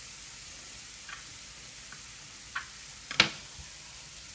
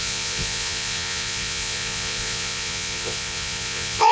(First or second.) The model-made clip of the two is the second